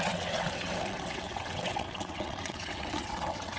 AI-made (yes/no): yes